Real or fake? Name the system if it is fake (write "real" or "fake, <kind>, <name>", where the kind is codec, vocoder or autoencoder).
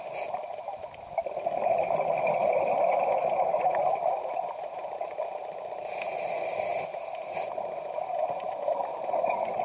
real